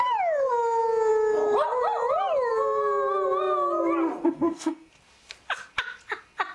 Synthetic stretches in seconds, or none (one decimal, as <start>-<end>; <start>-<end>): 4.2-4.9